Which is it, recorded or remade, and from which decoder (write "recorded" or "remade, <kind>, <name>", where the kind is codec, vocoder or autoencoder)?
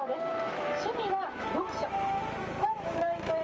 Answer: remade, autoencoder, DAC-VAE